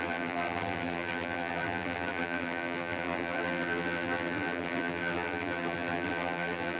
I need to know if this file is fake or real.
fake